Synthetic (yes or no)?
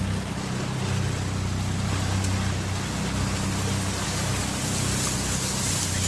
no